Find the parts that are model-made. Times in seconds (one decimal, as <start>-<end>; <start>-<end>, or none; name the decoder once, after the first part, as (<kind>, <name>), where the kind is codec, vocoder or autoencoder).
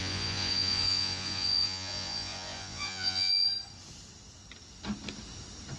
0.0-3.5 (vocoder, Vocos)